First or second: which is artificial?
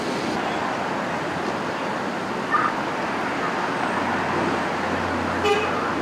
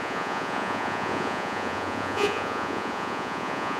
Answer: second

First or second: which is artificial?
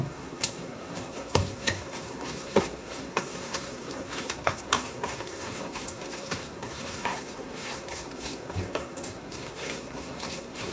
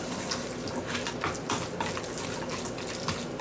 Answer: first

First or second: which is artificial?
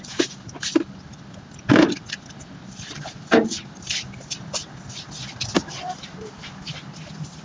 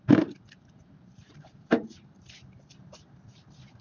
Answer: second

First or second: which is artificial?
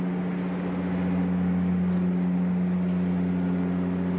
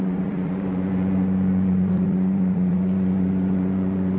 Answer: second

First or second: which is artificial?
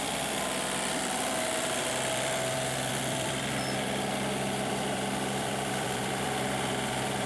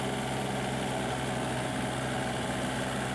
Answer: first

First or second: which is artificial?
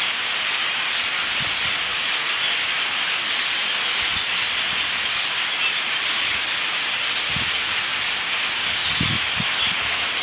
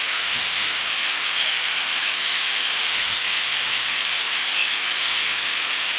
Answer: second